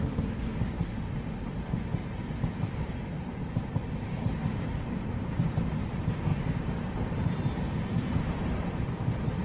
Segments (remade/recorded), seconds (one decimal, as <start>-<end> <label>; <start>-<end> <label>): 0.0-1.9 recorded; 1.9-5.4 remade; 5.4-6.3 recorded; 6.3-8.2 remade; 8.2-9.4 recorded

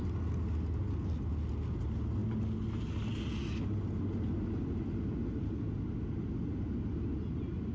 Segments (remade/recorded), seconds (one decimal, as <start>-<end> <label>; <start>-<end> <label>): 0.0-7.7 recorded

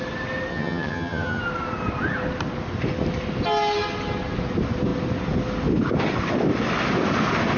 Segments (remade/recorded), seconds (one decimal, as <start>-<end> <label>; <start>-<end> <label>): 0.0-0.5 recorded; 0.5-1.4 remade; 1.4-7.6 recorded

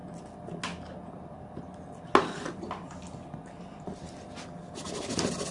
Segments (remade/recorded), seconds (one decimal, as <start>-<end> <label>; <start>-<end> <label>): 0.0-5.5 recorded